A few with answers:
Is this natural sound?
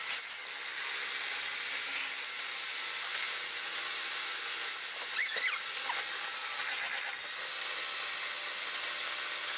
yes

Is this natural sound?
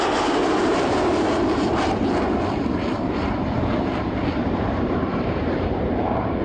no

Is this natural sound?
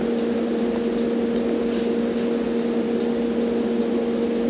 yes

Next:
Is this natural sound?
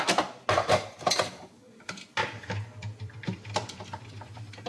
yes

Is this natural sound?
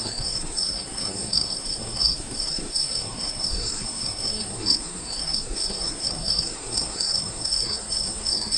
no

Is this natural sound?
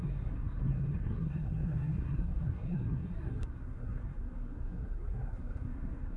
no